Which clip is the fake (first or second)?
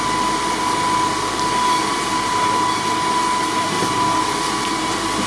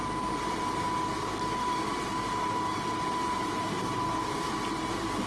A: second